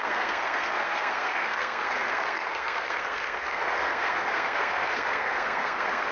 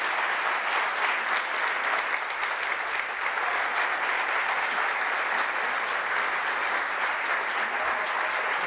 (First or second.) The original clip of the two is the second